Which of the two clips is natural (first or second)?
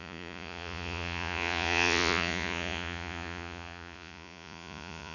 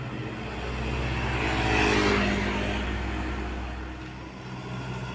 second